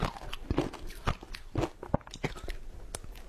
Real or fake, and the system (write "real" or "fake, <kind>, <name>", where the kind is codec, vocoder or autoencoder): real